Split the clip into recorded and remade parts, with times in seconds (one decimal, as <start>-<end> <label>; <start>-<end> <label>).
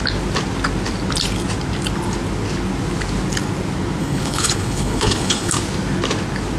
0.0-4.0 recorded; 4.0-5.5 remade; 5.5-6.6 recorded